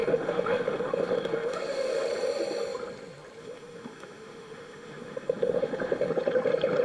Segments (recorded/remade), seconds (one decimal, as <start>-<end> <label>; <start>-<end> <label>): 0.0-2.1 remade; 2.1-3.4 recorded; 3.4-6.1 remade; 6.1-6.8 recorded